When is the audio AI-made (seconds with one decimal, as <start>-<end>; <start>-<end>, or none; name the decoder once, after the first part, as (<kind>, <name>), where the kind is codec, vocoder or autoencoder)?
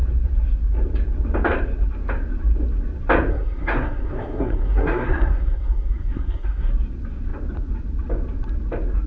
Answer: 3.3-6.7 (codec, SNAC)